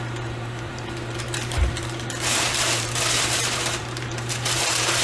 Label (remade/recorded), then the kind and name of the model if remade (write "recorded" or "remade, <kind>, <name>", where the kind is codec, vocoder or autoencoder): remade, vocoder, BigVGAN v2